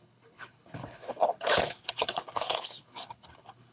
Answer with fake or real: fake